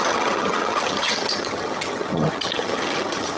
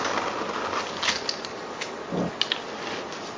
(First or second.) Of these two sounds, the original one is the second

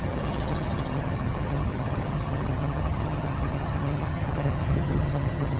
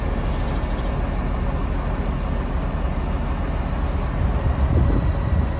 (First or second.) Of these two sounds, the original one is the second